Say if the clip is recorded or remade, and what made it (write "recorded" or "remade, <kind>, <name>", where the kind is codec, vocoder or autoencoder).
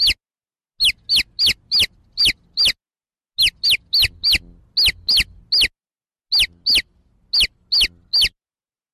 recorded